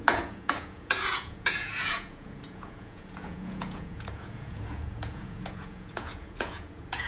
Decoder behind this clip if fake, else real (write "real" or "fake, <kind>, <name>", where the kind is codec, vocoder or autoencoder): fake, vocoder, Vocos